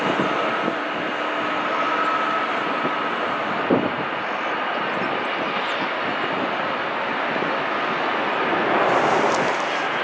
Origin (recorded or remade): recorded